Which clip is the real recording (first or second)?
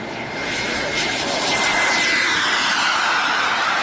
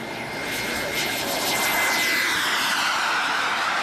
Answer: second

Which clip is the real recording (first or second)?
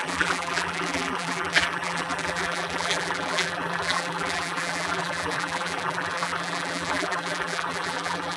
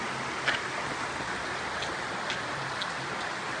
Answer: second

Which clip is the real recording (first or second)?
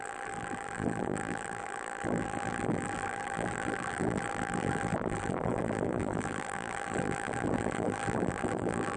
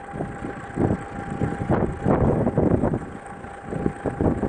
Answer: second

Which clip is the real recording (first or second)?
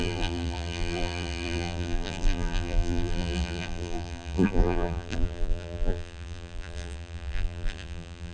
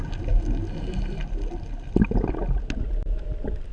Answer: second